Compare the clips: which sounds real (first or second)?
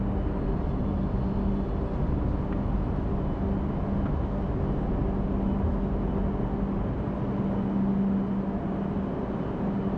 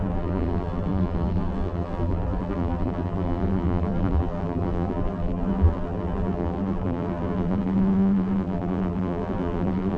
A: first